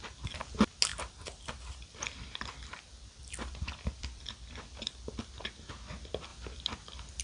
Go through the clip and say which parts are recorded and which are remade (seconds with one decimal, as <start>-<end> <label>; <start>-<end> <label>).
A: 0.0-0.9 recorded; 0.9-5.2 remade; 5.2-7.2 recorded